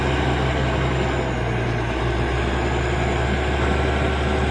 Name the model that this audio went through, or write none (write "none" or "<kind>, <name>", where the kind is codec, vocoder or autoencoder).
none